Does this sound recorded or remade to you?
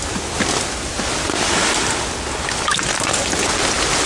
recorded